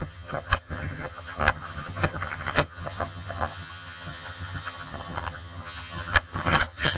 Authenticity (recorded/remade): remade